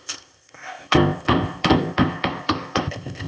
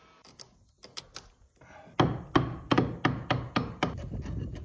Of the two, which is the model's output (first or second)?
first